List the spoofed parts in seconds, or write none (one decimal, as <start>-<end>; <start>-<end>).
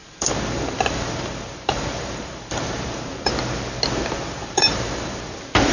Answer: 0.0-3.4; 4.4-5.2